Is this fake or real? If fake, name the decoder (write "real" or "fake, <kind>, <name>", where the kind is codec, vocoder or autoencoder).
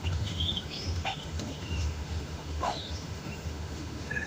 fake, autoencoder, DAC-VAE